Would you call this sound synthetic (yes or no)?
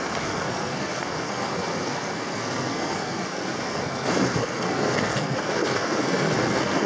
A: yes